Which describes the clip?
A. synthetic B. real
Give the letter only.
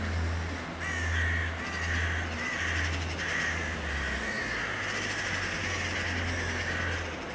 B